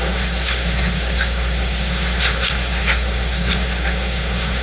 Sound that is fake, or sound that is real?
fake